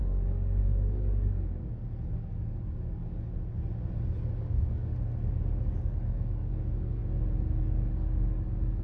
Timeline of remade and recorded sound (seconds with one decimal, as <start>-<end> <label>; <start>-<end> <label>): 0.0-3.0 remade; 3.0-4.4 recorded; 4.4-5.1 remade; 5.1-5.6 recorded; 5.6-7.0 remade; 7.0-7.6 recorded; 7.6-8.8 remade